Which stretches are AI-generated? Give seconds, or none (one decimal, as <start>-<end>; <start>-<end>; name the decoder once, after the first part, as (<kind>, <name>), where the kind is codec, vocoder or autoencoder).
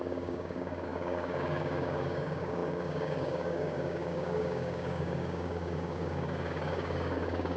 0.0-7.6 (codec, DAC)